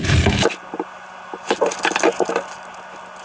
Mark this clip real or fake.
real